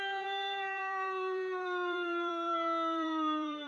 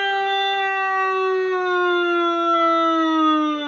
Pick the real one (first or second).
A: second